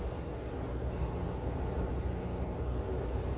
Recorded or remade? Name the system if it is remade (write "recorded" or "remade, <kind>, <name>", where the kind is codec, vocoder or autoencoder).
recorded